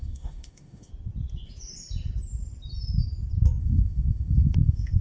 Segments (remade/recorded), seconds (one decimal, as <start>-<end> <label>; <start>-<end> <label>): 0.0-0.9 remade; 0.9-3.6 recorded; 3.6-5.0 remade